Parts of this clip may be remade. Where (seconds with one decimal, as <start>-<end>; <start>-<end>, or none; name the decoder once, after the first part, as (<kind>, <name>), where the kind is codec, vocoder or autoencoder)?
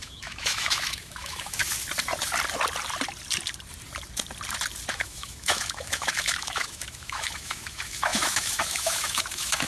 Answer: 0.0-1.6 (autoencoder, DAC-VAE); 4.9-9.7